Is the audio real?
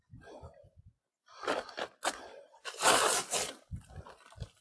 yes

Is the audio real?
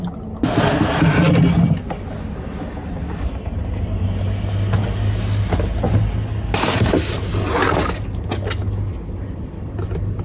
yes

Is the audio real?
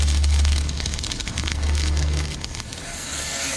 no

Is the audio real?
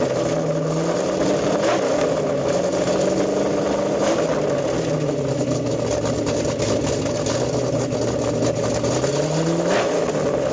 yes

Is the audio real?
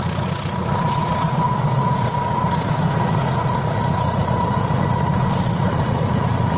no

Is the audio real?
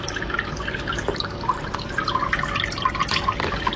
yes